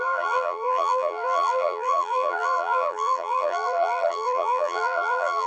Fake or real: fake